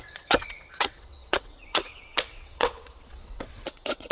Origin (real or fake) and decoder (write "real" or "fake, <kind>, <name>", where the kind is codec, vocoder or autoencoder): fake, vocoder, WaveNeXt